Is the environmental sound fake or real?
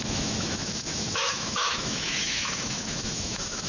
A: fake